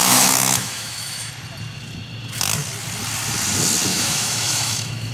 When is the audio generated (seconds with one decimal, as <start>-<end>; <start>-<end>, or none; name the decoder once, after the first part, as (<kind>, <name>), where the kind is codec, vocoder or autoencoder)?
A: 0.0-1.3 (autoencoder, DAC-VAE); 3.9-5.1